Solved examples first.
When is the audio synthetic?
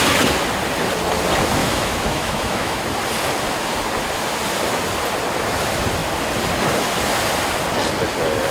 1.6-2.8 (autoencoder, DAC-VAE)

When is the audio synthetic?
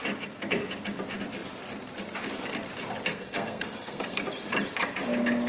3.1-4.2 (codec, SNAC)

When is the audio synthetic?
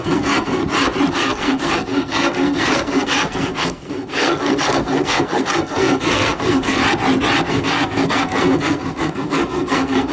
0.0-0.6 (codec, SNAC); 1.1-6.8; 7.5-10.1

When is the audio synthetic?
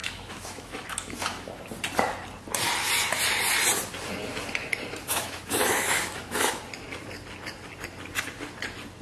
0.0-1.6 (autoencoder, DAC-VAE); 5.1-6.6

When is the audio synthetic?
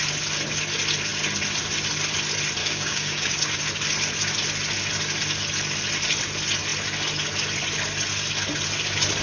2.6-3.3 (codec, DAC)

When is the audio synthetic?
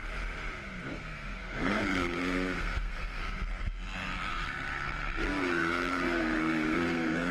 0.9-3.2 (codec, SNAC); 4.3-7.3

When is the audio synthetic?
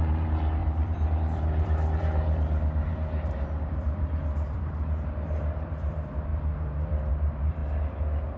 0.0-7.6 (vocoder, BigVGAN v2)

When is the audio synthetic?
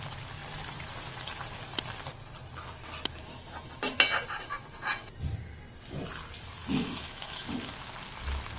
6.6-7.5 (autoencoder, DAC-VAE)